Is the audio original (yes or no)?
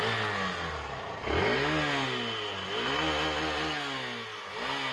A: yes